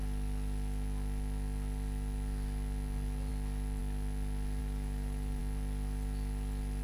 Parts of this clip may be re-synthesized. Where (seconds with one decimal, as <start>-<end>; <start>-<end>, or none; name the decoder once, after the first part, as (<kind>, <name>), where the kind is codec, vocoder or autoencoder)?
4.6-5.4 (autoencoder, DAC-VAE)